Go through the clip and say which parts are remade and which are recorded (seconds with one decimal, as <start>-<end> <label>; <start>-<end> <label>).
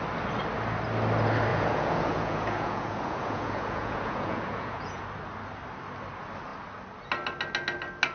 0.0-1.5 recorded; 1.5-5.0 remade; 5.0-8.1 recorded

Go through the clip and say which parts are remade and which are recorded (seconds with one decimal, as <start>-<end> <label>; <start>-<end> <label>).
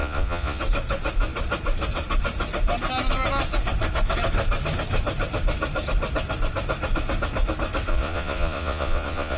0.0-0.6 remade; 0.6-7.9 recorded; 7.9-9.4 remade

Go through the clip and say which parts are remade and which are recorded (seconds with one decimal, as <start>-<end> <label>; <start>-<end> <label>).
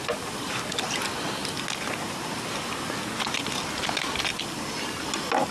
0.0-5.5 recorded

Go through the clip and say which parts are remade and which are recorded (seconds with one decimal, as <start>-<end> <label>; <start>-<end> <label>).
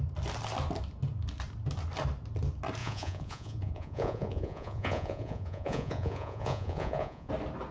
0.0-2.8 recorded; 2.8-7.3 remade; 7.3-7.7 recorded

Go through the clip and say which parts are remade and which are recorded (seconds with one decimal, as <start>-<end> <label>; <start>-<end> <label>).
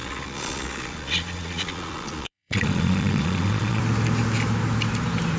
0.0-3.8 remade; 3.8-5.4 recorded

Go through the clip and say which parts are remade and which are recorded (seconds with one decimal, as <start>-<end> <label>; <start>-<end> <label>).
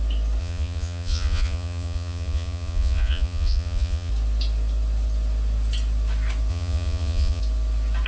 0.0-0.4 recorded; 0.4-4.1 remade; 4.1-6.5 recorded; 6.5-7.4 remade; 7.4-8.1 recorded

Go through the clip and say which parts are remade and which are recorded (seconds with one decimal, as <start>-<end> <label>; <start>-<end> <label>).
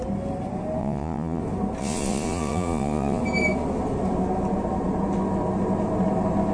0.0-0.8 recorded; 0.8-1.4 remade; 1.4-1.8 recorded; 1.8-3.2 remade; 3.2-6.5 recorded